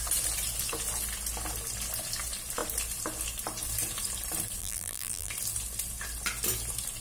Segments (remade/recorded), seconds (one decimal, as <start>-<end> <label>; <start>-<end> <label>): 0.0-4.6 recorded; 4.6-5.3 remade; 5.3-7.0 recorded